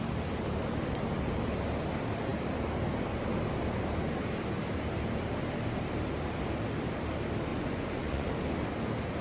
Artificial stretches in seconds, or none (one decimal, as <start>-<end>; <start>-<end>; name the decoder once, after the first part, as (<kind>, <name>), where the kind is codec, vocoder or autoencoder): 7.5-8.3 (vocoder, Vocos)